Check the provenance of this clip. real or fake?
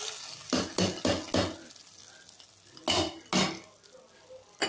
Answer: real